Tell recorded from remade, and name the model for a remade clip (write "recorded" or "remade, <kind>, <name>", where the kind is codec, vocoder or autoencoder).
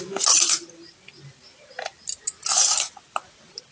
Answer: recorded